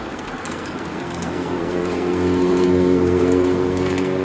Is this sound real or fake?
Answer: fake